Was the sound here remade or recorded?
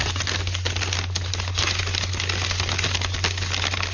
recorded